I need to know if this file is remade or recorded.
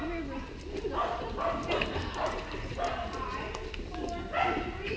recorded